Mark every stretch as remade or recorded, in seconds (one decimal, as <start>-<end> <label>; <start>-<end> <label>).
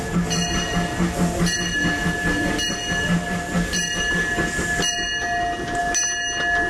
0.0-6.7 recorded